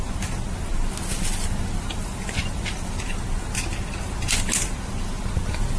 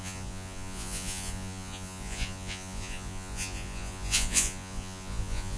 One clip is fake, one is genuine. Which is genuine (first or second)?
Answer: first